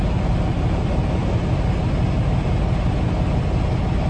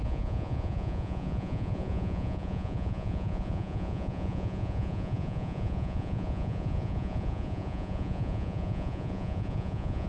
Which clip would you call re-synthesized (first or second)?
second